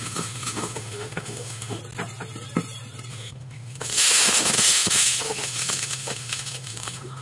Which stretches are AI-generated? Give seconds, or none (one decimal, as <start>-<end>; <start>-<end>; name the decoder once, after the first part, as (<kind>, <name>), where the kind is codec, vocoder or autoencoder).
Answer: 0.0-1.8 (autoencoder, DAC-VAE); 3.1-7.2